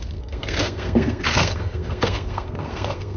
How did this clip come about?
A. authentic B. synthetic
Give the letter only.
B